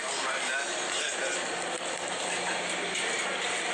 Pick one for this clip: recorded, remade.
recorded